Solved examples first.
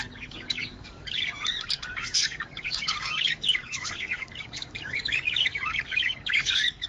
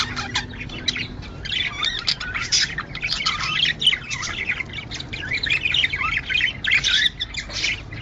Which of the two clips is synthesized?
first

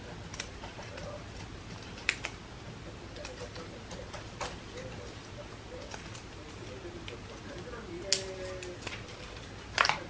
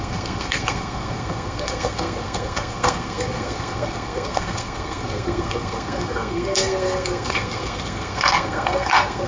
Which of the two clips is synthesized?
second